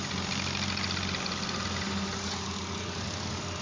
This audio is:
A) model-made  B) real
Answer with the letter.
B